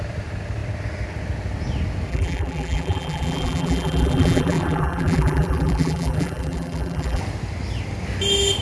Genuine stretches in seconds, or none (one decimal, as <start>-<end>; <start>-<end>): 0.0-2.1; 7.2-8.6